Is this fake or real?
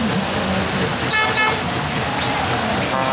real